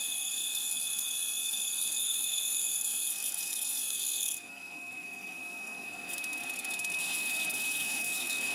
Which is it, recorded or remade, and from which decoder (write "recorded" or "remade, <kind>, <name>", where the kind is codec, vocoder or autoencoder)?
remade, codec, SNAC